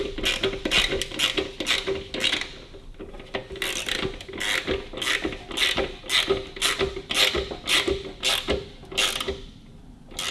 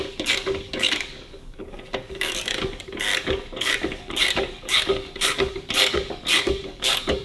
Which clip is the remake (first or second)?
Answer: second